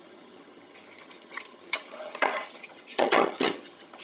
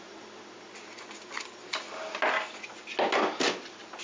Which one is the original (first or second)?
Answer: second